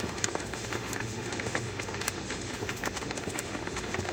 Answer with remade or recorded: remade